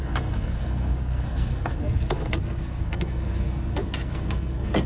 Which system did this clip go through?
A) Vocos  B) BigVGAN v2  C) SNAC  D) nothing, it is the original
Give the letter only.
C